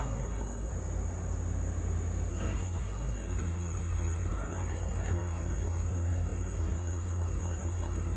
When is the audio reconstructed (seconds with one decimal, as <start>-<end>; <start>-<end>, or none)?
0.0-0.7; 2.3-8.2